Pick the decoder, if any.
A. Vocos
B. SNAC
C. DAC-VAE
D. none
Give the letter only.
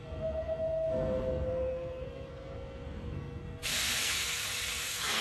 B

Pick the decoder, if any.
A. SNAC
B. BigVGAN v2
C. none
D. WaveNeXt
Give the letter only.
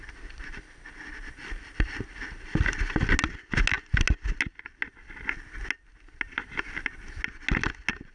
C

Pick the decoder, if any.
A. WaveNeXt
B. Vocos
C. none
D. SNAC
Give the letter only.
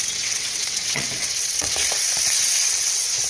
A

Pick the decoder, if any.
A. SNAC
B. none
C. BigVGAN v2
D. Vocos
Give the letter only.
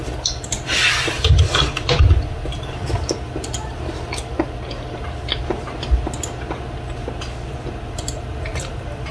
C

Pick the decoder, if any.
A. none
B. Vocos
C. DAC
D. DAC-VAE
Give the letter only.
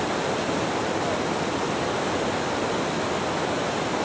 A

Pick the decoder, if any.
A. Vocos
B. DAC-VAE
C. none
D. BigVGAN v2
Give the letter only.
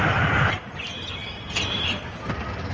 C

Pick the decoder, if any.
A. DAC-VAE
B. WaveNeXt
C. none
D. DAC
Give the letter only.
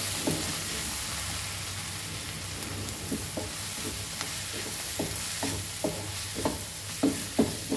C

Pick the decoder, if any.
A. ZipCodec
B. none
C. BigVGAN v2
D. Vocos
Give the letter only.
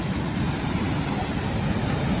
B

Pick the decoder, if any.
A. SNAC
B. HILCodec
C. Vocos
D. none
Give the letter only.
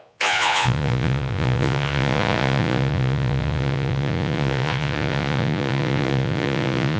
C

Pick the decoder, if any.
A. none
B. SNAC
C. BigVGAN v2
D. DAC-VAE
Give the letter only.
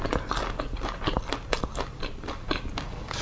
A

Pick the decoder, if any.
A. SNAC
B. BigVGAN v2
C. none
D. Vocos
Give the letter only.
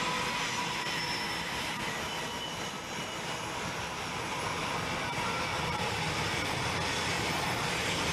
C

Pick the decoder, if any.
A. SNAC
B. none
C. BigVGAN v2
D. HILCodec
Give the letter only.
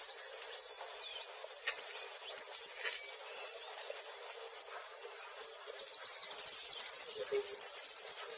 B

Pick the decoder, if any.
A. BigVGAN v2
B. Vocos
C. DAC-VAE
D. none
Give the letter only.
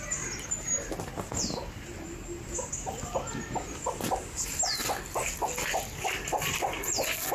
D